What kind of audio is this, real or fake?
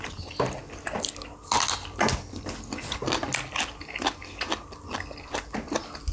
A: real